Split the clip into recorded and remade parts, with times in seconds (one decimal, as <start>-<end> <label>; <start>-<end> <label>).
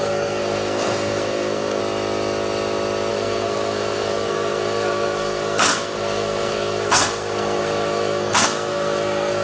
0.0-1.8 remade; 1.8-3.1 recorded; 3.1-9.4 remade